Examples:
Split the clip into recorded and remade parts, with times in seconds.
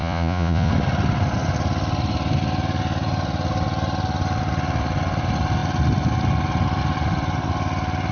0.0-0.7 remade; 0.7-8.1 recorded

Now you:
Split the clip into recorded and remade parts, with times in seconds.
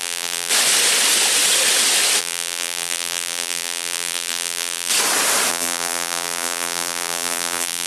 0.0-0.5 remade; 0.5-2.2 recorded; 2.2-4.9 remade; 4.9-5.5 recorded; 5.5-7.9 remade